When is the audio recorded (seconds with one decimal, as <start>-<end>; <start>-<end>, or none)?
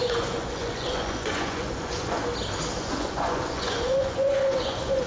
2.2-2.8